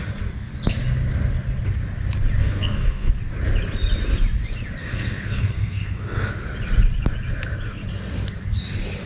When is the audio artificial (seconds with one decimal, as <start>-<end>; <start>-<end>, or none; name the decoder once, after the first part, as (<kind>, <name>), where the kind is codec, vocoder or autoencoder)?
2.4-3.1 (codec, SNAC); 4.8-6.3